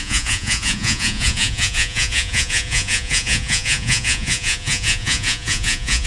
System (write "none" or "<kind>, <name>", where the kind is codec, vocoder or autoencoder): vocoder, Vocos